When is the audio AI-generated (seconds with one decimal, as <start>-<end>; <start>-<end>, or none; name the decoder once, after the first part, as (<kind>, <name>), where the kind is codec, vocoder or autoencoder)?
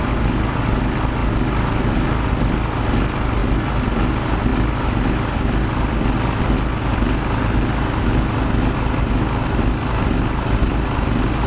none